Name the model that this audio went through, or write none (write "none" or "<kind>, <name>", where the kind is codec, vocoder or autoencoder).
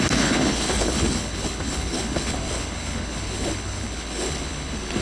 codec, HILCodec